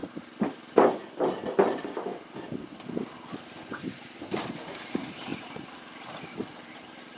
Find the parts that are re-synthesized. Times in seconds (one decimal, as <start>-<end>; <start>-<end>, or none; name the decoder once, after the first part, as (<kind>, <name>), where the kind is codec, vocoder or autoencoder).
4.3-7.2 (vocoder, BigVGAN v2)